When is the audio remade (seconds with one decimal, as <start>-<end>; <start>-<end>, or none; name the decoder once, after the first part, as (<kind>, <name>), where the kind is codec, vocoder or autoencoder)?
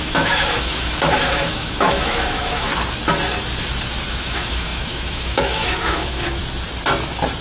0.0-2.7 (autoencoder, DAC-VAE); 4.1-6.4